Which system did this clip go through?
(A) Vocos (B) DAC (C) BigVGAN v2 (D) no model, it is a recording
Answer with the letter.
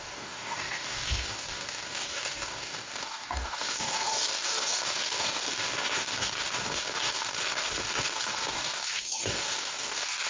B